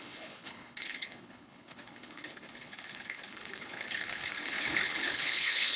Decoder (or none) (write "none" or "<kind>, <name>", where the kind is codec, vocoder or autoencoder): codec, HILCodec